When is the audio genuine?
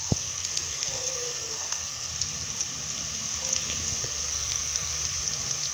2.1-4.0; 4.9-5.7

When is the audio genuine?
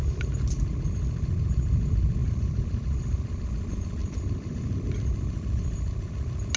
0.0-2.2; 3.0-4.0; 6.1-6.6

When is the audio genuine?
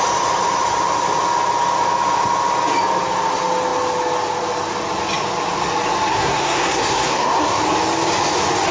0.0-6.1; 7.6-8.7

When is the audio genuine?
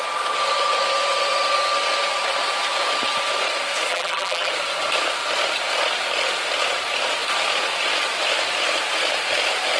0.0-3.9; 4.5-9.8